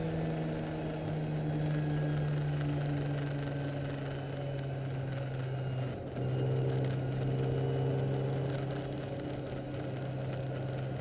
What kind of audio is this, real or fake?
real